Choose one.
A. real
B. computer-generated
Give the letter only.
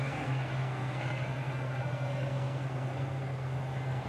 B